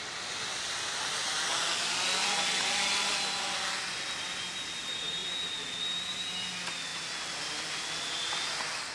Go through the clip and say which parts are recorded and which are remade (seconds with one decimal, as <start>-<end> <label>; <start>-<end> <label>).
0.0-8.9 recorded